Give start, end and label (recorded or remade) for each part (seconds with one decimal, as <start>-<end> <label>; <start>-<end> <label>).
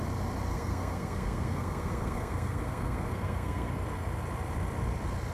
0.0-0.5 recorded; 0.5-3.7 remade; 3.7-5.3 recorded